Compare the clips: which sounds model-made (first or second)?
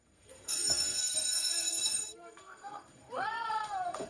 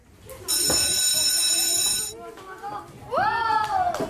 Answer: first